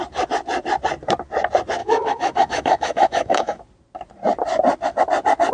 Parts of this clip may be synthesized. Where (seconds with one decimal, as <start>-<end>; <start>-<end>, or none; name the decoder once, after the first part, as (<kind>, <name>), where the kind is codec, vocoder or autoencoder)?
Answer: 1.8-3.6 (autoencoder, DAC-VAE)